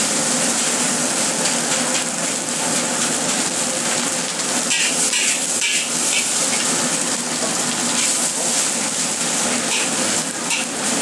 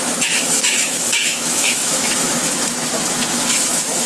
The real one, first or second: first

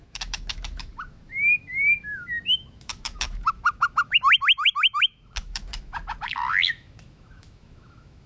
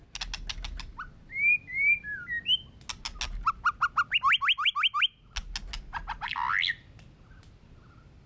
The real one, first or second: second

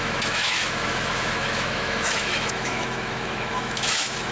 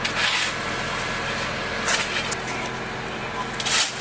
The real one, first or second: second